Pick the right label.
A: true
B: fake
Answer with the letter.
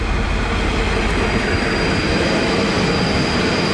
A